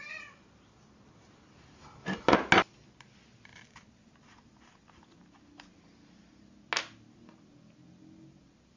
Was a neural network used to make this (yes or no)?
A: no